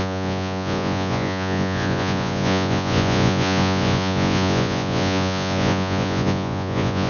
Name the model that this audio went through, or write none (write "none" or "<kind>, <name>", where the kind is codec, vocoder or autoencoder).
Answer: vocoder, Vocos